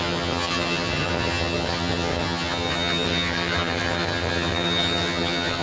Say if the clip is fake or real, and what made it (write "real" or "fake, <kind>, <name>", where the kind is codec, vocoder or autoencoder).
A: fake, vocoder, HiFi-GAN